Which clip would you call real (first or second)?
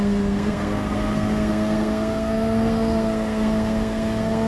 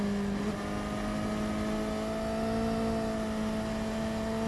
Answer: second